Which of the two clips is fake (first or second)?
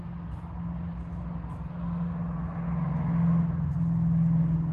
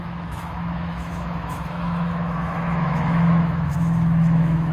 second